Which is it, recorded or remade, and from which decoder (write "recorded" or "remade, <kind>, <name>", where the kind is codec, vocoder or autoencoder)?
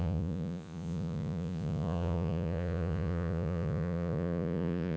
remade, vocoder, Vocos